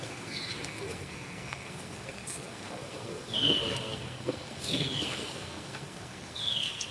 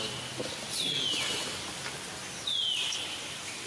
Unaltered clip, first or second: second